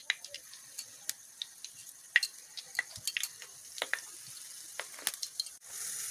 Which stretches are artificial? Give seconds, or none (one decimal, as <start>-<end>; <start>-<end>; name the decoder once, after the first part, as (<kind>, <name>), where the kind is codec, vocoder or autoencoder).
none